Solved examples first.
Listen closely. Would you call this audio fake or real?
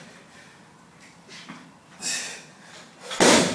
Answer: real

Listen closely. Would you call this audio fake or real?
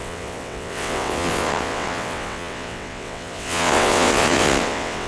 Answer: fake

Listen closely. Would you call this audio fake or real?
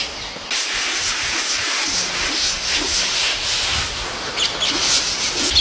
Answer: real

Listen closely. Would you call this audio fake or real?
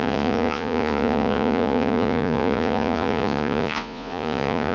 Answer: fake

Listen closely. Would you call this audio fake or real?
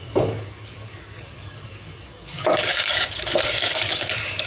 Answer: fake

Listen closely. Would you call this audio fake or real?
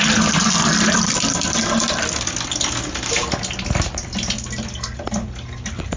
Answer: real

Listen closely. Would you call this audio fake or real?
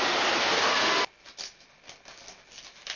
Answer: real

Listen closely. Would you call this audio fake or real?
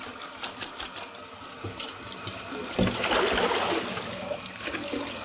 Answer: real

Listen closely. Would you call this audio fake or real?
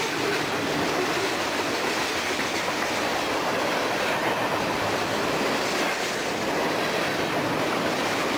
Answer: real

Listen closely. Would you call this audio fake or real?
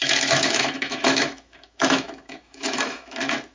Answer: fake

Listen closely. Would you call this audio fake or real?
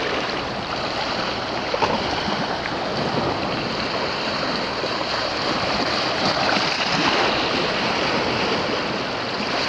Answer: fake